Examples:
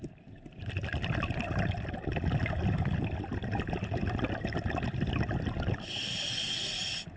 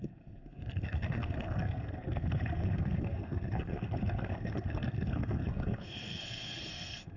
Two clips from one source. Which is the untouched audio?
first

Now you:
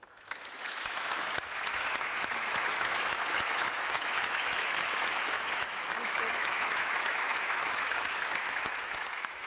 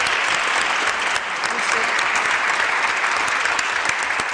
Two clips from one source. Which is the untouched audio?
second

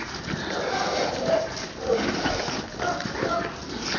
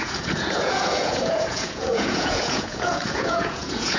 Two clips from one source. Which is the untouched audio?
first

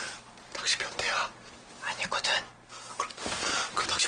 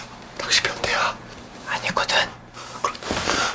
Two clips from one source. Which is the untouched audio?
first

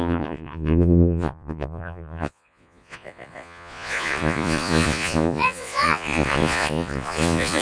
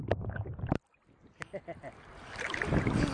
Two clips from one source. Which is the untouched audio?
second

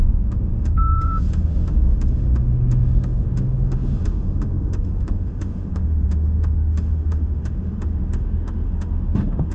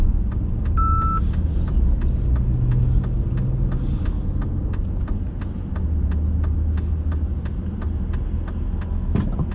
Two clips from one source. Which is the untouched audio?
second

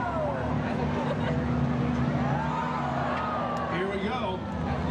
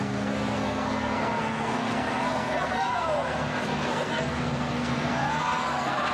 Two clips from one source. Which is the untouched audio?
first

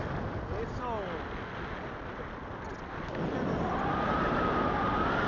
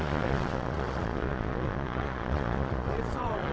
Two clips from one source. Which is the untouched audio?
first